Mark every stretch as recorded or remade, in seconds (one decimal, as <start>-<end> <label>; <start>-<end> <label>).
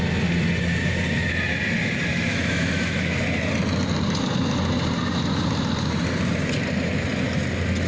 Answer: 0.0-2.1 recorded; 2.1-3.2 remade; 3.2-7.9 recorded